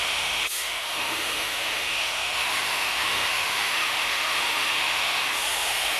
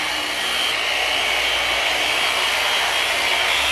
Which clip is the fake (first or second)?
first